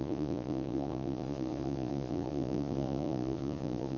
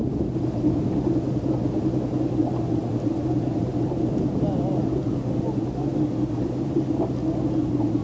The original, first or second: second